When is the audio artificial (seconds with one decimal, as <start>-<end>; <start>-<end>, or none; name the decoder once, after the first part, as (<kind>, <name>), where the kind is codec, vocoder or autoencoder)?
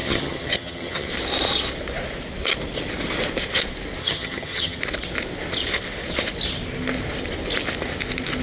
0.0-1.1 (vocoder, HiFi-GAN); 4.0-4.8